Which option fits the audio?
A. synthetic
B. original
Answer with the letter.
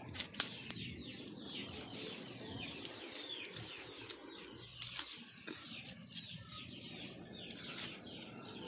B